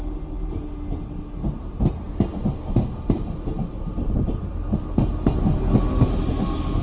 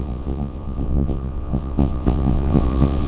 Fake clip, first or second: second